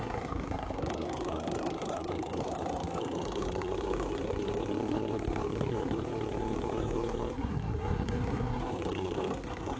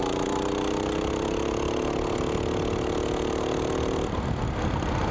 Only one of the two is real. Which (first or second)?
second